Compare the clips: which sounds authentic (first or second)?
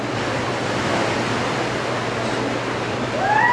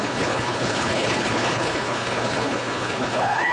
first